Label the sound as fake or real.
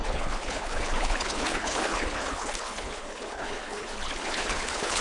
fake